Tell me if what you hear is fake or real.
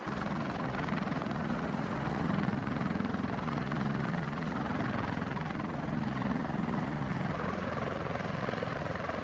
fake